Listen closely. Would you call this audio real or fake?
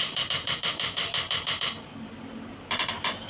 fake